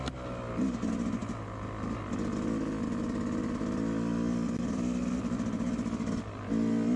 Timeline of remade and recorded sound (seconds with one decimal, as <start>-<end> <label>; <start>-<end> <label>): 0.0-4.1 recorded; 4.1-5.2 remade; 5.2-7.0 recorded